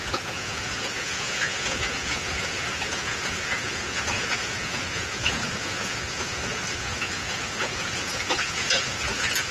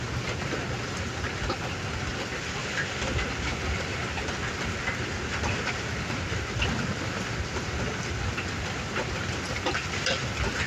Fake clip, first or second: first